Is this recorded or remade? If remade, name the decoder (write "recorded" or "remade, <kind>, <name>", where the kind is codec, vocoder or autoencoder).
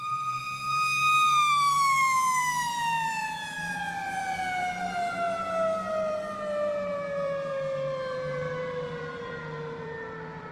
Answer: remade, vocoder, BigVGAN v2